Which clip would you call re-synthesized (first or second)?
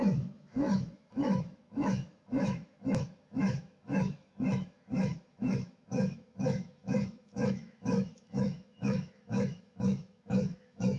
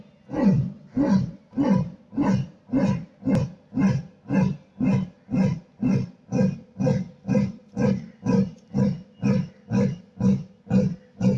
first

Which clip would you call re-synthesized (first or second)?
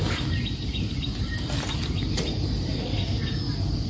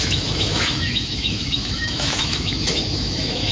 second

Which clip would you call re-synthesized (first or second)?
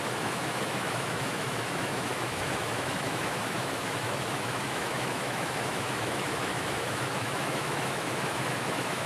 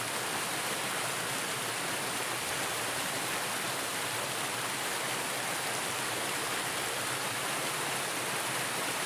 first